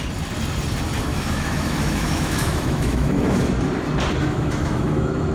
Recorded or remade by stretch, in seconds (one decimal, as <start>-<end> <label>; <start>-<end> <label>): 0.0-1.1 recorded; 1.1-3.5 remade; 3.5-4.2 recorded; 4.2-5.3 remade